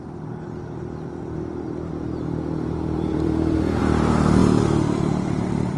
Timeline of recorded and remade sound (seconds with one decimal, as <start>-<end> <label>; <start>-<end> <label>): 0.0-5.8 remade